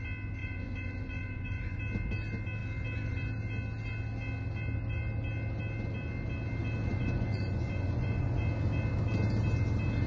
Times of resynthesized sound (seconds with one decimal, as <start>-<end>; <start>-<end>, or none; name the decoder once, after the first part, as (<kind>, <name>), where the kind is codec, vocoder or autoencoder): 0.4-1.8 (vocoder, Vocos); 6.9-8.4